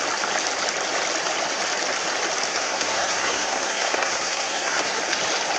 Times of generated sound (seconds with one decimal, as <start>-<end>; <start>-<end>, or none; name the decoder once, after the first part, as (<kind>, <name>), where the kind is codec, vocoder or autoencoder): 2.5-5.0 (codec, SNAC)